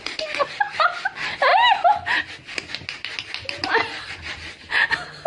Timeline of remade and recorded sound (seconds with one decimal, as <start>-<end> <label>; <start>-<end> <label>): 0.0-5.3 recorded